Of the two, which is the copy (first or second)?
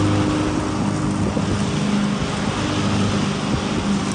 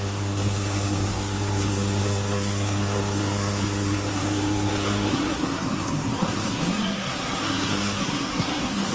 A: second